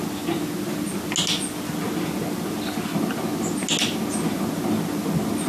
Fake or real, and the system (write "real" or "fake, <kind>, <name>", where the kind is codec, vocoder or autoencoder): real